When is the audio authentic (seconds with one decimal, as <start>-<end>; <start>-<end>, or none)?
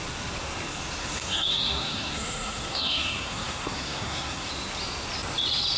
0.0-1.0; 4.5-5.8